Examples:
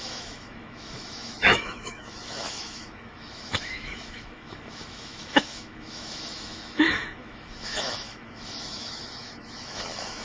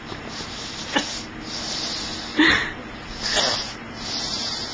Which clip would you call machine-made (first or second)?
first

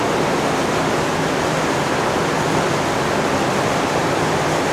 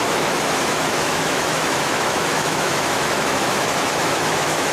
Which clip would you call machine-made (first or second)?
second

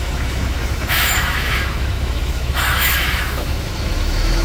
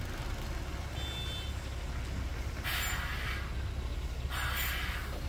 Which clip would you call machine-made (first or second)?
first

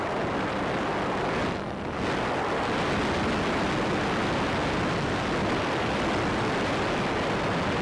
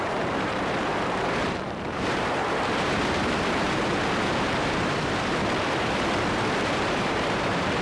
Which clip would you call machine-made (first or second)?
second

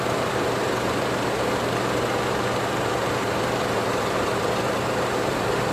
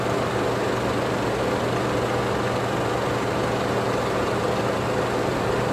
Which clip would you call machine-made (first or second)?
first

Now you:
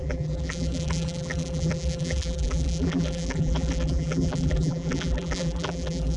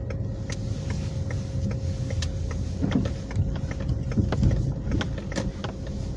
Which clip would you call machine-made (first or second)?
first